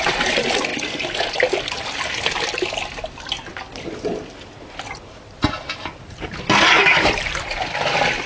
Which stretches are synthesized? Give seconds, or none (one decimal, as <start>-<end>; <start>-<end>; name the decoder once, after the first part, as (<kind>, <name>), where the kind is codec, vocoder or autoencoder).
none